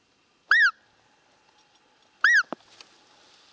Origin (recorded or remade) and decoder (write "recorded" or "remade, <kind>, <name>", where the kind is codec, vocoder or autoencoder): recorded